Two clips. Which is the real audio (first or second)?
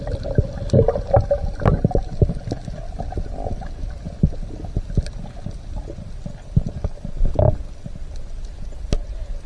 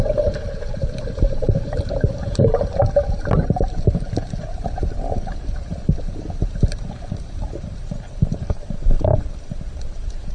first